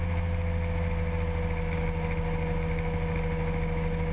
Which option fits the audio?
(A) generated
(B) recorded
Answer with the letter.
B